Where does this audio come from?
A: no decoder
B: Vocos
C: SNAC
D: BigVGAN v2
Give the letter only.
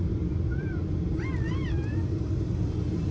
D